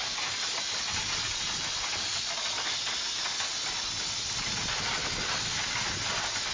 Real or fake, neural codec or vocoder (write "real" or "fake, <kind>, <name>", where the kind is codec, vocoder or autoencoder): real